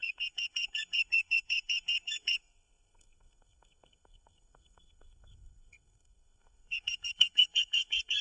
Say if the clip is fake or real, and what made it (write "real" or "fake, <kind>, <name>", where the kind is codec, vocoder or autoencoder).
fake, codec, SNAC